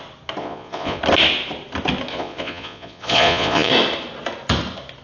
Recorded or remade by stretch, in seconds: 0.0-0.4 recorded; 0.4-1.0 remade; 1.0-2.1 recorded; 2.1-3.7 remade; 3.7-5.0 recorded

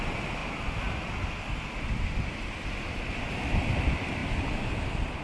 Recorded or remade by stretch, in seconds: 0.0-5.2 recorded

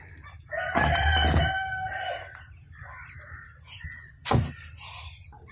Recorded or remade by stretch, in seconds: 0.0-1.2 remade; 1.2-4.5 recorded; 4.5-5.5 remade

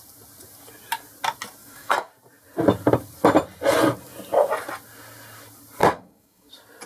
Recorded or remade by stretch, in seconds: 0.0-1.6 recorded; 1.6-2.1 remade; 2.1-5.8 recorded; 5.8-6.5 remade; 6.5-6.9 recorded

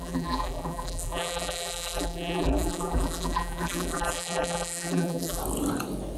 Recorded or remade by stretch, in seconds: 0.0-5.4 remade; 5.4-6.2 recorded

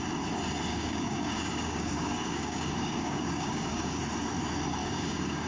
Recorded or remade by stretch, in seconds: 0.0-0.7 recorded; 0.7-4.0 remade; 4.0-4.8 recorded; 4.8-5.5 remade

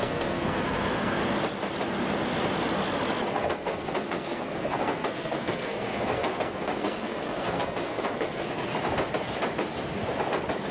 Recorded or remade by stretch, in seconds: 0.0-1.2 remade; 1.2-3.3 recorded; 3.3-8.7 remade; 8.7-10.7 recorded